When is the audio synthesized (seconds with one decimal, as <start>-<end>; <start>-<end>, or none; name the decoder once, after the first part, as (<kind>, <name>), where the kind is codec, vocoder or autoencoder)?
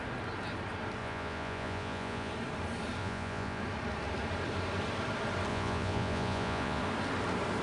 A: 1.0-2.3 (vocoder, Vocos); 3.0-3.6; 5.5-6.8